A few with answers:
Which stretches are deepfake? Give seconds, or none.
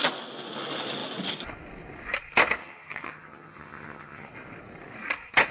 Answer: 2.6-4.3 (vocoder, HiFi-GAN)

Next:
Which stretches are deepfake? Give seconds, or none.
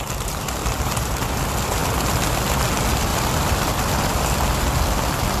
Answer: 0.6-1.4 (vocoder, BigVGAN v2); 3.1-4.2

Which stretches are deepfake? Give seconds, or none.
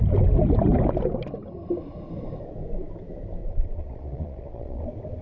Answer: 3.4-4.8 (vocoder, Vocos)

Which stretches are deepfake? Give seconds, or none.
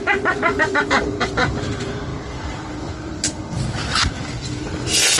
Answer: none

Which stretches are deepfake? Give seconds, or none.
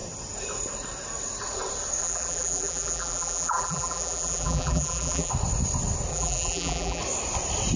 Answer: 2.0-5.3 (vocoder, BigVGAN v2); 6.1-7.0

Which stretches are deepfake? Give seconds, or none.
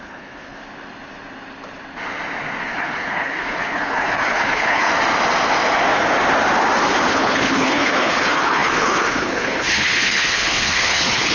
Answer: 0.0-0.6 (codec, HILCodec); 2.6-4.9; 7.1-11.3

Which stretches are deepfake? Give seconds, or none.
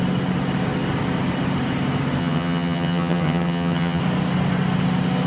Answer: 2.2-4.0 (vocoder, HiFi-GAN)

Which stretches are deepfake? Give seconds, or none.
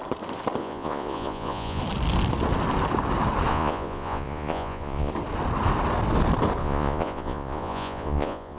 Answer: 0.6-1.8 (vocoder, Vocos); 3.5-5.1; 6.6-8.6